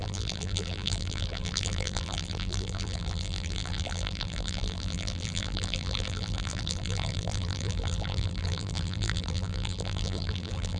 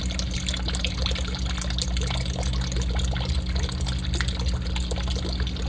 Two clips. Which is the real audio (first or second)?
second